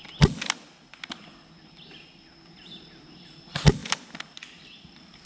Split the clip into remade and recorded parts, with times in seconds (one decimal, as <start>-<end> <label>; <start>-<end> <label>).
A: 0.0-5.3 recorded